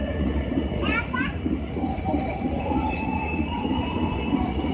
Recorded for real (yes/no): no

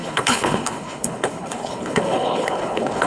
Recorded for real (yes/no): no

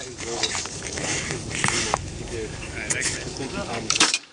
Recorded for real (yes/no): no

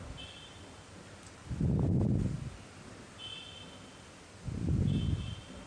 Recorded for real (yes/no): yes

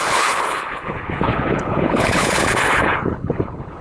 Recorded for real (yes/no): no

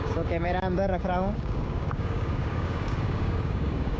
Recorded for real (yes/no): no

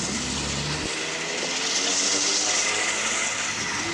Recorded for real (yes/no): yes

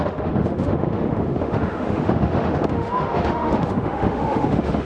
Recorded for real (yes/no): no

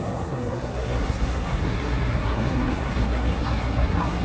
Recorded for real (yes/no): no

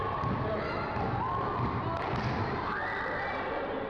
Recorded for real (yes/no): yes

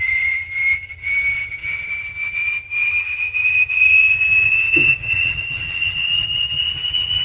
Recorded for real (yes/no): no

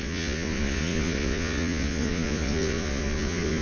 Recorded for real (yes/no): no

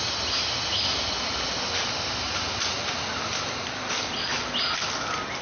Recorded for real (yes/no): yes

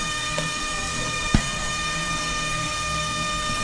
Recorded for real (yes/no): no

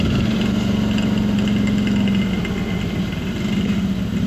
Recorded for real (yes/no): yes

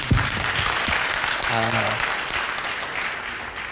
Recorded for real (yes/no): yes